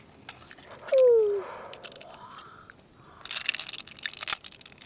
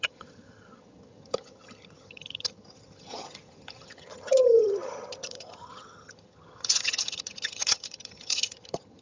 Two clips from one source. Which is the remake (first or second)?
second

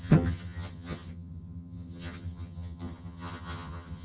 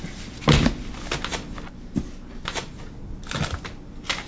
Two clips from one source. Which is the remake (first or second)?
first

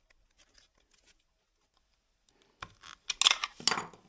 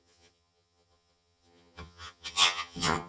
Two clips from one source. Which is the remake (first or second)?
second